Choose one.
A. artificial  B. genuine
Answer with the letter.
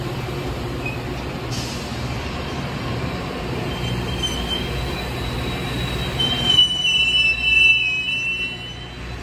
B